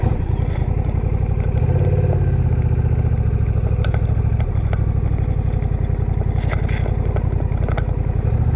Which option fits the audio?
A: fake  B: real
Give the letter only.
B